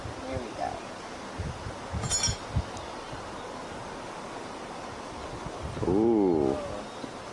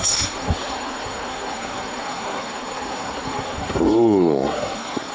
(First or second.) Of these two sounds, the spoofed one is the second